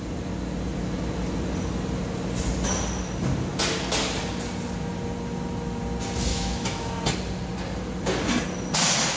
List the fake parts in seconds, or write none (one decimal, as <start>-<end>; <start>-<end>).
6.3-6.9